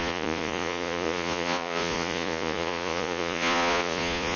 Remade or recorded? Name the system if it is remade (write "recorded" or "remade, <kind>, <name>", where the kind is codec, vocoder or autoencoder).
remade, vocoder, Vocos